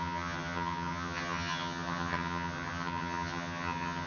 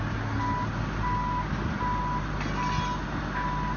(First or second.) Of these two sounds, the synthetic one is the first